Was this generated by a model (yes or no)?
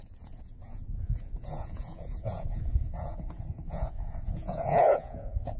yes